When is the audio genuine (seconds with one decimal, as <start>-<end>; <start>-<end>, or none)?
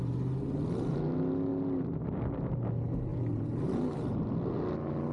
0.0-3.1; 3.8-5.1